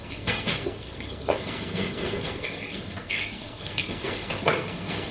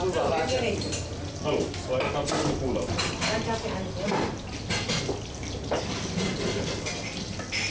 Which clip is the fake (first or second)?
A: first